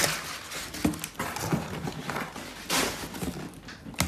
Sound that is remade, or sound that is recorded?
recorded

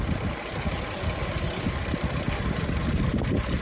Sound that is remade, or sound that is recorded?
recorded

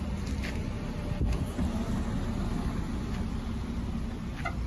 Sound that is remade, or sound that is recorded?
recorded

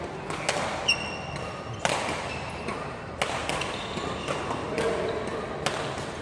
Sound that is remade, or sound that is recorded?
recorded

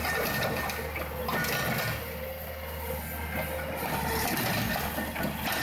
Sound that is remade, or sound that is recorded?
recorded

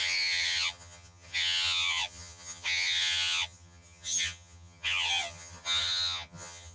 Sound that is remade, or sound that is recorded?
remade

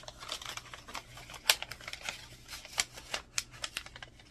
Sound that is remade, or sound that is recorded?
recorded